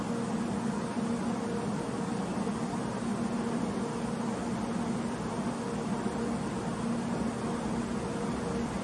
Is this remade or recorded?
recorded